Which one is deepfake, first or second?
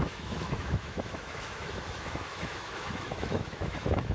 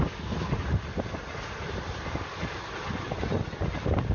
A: first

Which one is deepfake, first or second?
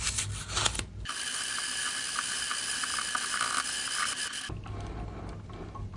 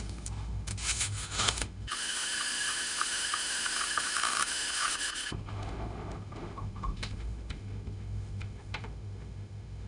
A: second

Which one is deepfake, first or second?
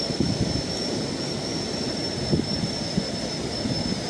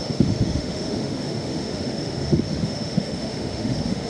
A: second